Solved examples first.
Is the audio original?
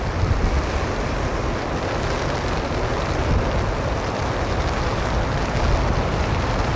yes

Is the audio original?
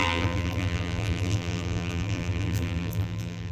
no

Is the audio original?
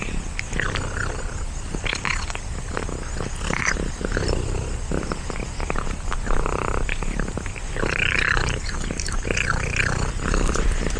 yes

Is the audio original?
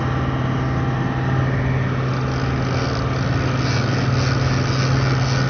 yes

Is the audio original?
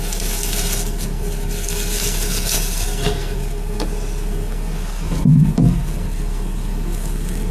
no